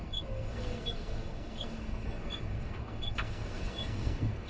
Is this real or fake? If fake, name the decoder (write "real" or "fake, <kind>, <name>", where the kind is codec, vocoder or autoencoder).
fake, codec, SNAC